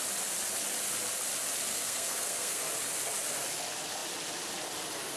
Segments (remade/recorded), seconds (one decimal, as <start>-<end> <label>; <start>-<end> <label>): 0.0-1.7 recorded; 1.7-2.6 remade; 2.6-5.2 recorded